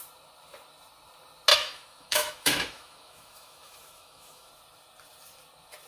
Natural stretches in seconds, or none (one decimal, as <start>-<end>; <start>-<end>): 0.0-1.5; 4.5-5.9